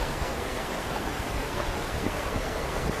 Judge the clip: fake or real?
fake